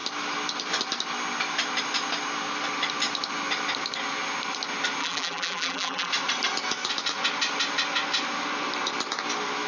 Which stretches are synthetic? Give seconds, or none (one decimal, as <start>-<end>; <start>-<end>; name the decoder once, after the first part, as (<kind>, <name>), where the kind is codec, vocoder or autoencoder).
5.0-6.1 (vocoder, BigVGAN v2)